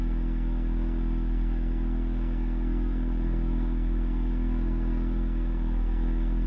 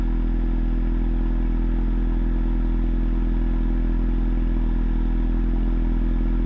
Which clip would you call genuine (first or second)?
second